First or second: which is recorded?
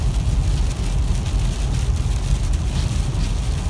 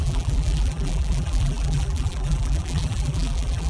first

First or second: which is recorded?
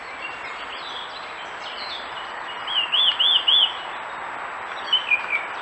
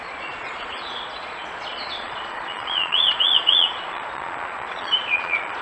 first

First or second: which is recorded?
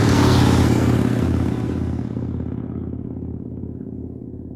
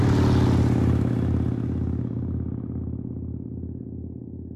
second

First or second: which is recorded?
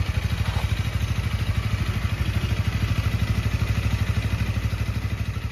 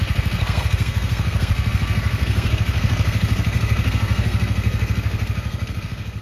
first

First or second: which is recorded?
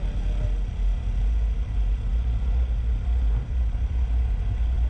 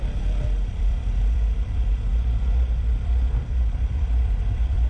first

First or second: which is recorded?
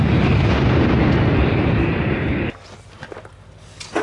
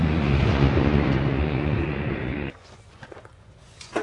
first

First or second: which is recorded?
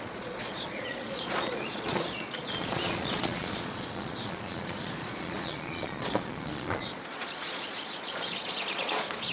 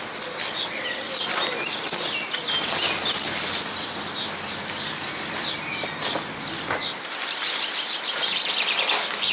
second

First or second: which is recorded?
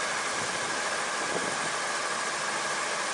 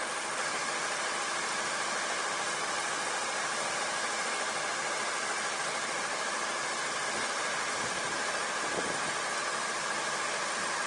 second